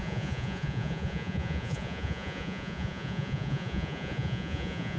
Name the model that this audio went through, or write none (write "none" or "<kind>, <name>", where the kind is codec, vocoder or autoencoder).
vocoder, Vocos